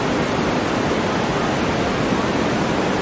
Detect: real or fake real